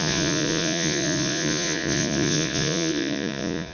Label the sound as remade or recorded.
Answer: remade